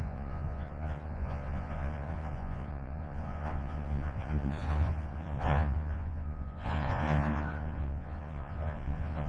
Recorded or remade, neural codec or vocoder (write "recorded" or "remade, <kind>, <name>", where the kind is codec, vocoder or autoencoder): remade, vocoder, Vocos